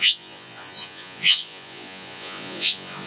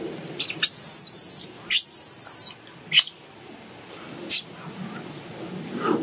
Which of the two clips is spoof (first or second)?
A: first